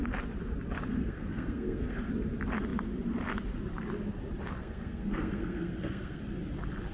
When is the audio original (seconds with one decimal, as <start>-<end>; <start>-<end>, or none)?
0.0-0.9; 2.1-4.6; 6.2-6.9